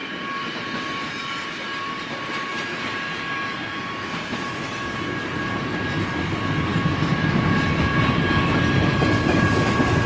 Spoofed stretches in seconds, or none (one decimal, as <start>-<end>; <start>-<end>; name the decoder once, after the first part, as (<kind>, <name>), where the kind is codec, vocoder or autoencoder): none

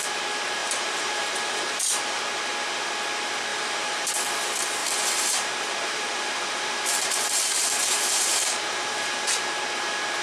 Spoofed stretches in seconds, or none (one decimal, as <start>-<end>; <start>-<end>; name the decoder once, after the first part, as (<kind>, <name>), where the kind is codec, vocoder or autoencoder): 0.6-2.2 (vocoder, BigVGAN v2); 3.5-4.1; 4.8-9.4

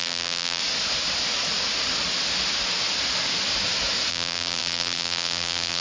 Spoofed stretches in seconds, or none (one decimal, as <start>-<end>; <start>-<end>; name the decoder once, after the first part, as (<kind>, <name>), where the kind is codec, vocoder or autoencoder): 0.0-0.6 (vocoder, BigVGAN v2); 4.1-5.8